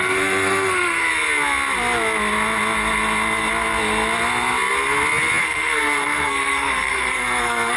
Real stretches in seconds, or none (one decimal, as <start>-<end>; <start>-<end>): 1.1-5.4